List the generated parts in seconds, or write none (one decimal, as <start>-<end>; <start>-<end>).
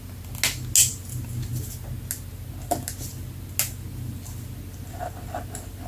none